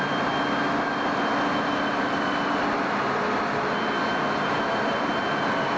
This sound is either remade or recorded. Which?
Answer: recorded